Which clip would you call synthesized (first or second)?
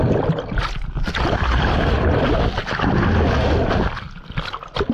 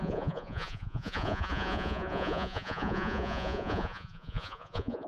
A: second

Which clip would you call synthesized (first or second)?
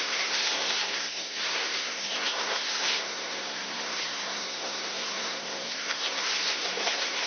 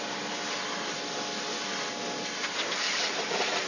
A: first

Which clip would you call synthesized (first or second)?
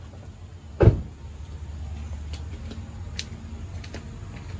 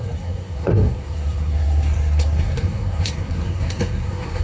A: second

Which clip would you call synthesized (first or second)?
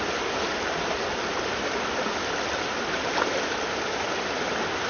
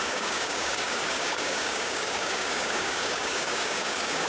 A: second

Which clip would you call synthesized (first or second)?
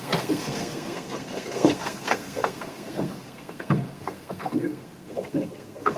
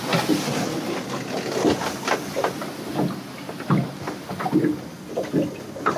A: first